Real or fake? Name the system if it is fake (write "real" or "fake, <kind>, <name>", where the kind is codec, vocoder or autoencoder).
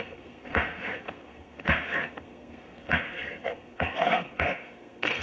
fake, codec, SNAC